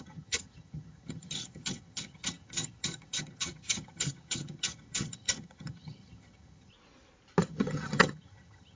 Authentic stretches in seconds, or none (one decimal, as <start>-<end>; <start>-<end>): 6.7-7.4